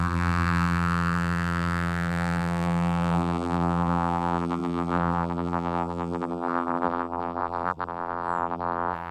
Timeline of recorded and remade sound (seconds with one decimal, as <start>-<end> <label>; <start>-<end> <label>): 0.0-9.1 remade